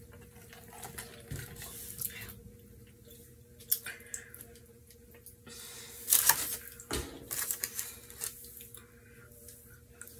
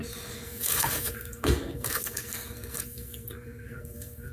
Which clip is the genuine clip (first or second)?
first